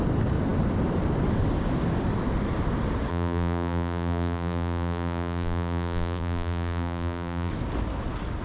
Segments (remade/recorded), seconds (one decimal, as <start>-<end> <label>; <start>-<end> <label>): 0.0-3.1 recorded; 3.1-7.5 remade; 7.5-8.4 recorded

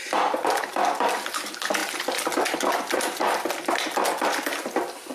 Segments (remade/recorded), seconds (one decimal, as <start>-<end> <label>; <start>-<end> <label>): 0.0-5.1 recorded

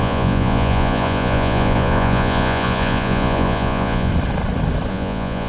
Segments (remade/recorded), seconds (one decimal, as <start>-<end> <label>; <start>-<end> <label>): 0.0-4.1 remade; 4.1-4.9 recorded; 4.9-5.5 remade

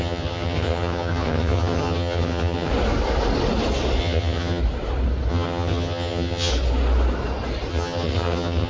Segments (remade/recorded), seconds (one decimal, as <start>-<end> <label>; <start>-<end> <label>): 0.0-2.7 remade; 2.7-4.0 recorded; 4.0-4.6 remade; 4.6-5.3 recorded; 5.3-6.5 remade; 6.5-7.7 recorded; 7.7-8.7 remade

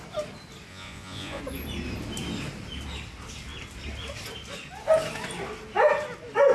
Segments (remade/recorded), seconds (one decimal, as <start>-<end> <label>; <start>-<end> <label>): 0.0-0.7 recorded; 0.7-1.4 remade; 1.4-6.5 recorded